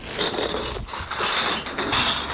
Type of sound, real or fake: real